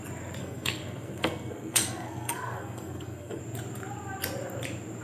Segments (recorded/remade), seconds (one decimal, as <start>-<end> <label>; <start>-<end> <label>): 0.0-0.4 recorded; 0.4-3.4 remade; 3.4-5.0 recorded